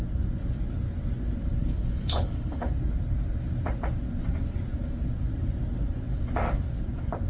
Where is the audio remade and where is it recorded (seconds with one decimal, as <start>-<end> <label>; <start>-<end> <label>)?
0.0-1.6 recorded; 1.6-2.7 remade; 2.7-7.3 recorded